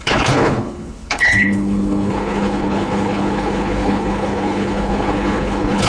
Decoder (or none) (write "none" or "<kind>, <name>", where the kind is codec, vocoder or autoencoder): codec, HILCodec